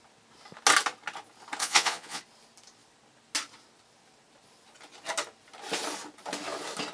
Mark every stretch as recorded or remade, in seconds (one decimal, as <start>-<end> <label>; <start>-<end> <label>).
0.0-1.6 recorded; 1.6-2.2 remade; 2.2-6.9 recorded